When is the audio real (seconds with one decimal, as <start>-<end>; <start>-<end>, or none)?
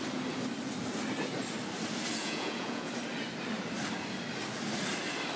0.0-2.2; 2.9-5.4